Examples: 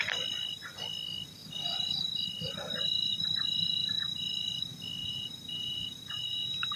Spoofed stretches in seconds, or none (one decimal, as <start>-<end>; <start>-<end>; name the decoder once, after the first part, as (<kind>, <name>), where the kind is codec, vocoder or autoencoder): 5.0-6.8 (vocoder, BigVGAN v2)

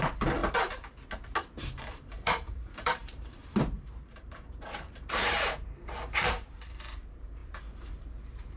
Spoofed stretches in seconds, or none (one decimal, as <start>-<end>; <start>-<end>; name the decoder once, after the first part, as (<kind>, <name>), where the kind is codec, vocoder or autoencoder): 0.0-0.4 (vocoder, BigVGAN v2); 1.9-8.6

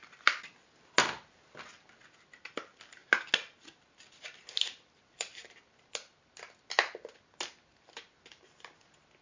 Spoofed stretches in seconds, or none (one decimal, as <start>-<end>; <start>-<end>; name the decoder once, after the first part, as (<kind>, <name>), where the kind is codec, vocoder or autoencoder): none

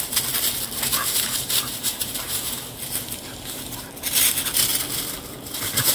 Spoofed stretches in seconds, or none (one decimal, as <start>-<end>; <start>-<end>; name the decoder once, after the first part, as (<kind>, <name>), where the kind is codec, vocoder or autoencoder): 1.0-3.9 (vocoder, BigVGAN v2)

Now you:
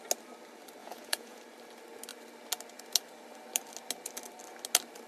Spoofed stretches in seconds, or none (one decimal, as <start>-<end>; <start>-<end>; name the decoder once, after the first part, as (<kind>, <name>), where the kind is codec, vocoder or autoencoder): 0.8-1.4 (vocoder, Vocos)

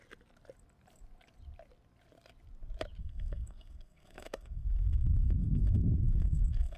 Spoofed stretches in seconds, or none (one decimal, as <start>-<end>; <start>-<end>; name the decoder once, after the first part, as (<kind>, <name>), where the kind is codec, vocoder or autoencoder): 3.0-6.8 (codec, SNAC)

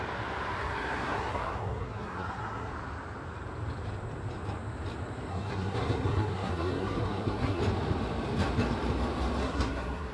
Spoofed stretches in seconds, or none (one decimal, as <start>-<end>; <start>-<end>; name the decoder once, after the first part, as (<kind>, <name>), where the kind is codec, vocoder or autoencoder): 0.6-2.7 (codec, SNAC); 5.3-7.6; 9.4-10.1

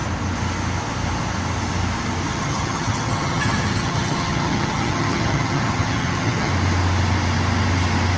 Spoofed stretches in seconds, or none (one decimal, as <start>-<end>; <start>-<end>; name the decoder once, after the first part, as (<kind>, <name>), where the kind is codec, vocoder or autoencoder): 2.3-6.5 (vocoder, HiFi-GAN)